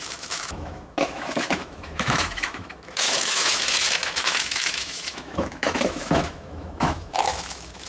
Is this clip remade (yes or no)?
yes